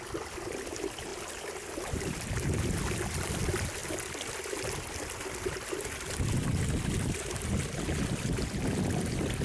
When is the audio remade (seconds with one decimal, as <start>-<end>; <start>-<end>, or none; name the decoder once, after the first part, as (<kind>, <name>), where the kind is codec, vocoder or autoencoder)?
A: 1.1-3.4 (vocoder, BigVGAN v2)